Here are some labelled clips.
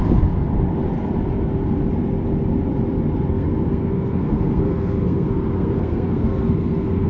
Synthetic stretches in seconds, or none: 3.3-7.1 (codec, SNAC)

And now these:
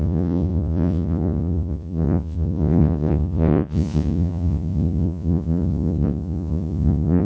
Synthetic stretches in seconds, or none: 0.0-7.2 (vocoder, Vocos)

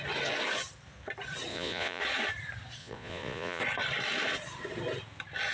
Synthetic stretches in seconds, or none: 1.5-2.0 (vocoder, Vocos); 2.8-3.6